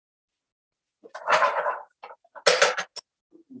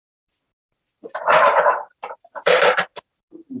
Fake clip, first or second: second